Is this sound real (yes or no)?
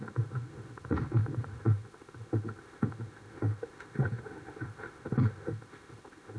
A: no